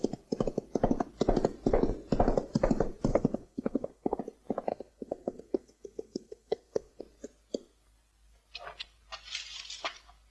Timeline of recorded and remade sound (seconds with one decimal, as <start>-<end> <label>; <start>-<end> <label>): 0.0-3.1 recorded; 3.1-4.2 remade; 4.2-4.7 recorded; 4.7-7.0 remade; 7.0-10.3 recorded

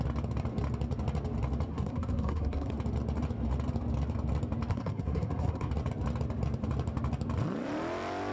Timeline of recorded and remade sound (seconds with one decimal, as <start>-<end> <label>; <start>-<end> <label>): 0.0-1.7 recorded; 1.7-2.7 remade; 2.7-4.7 recorded; 4.7-5.7 remade; 5.7-8.3 recorded

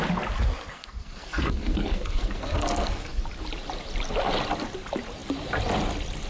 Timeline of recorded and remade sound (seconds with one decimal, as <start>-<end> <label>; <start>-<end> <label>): 0.0-0.7 recorded; 0.7-3.2 remade; 3.2-6.3 recorded

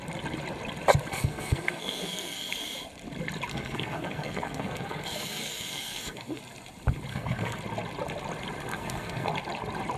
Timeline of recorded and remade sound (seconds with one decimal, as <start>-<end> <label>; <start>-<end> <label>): 0.0-1.1 recorded; 1.1-2.5 remade; 2.5-3.5 recorded; 3.5-6.4 remade; 6.4-7.1 recorded; 7.1-7.6 remade; 7.6-8.7 recorded; 8.7-9.3 remade; 9.3-10.0 recorded

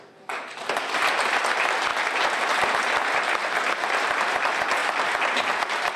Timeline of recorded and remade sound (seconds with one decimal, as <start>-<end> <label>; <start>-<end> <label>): 0.0-6.0 recorded

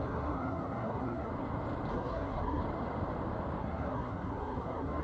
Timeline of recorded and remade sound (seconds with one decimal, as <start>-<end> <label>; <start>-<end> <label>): 0.0-1.3 remade; 1.3-1.9 recorded; 1.9-2.6 remade; 2.6-3.6 recorded; 3.6-5.0 remade

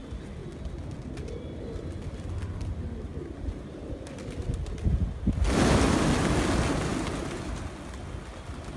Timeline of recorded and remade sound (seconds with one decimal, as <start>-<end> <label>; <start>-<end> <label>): 0.0-8.8 recorded